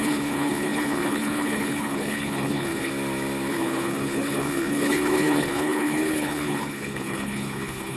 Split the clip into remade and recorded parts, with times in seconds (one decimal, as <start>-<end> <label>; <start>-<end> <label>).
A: 0.0-2.9 remade; 2.9-3.5 recorded; 3.5-8.0 remade